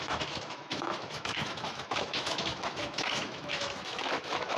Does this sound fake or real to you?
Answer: fake